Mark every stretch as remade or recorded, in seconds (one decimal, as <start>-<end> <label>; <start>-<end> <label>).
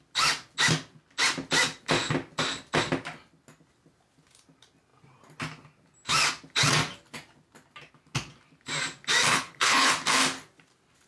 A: 0.0-9.3 recorded; 9.3-9.9 remade; 9.9-11.1 recorded